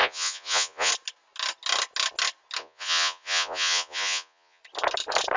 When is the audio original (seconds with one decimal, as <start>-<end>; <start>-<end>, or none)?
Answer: 0.9-2.6; 4.6-5.4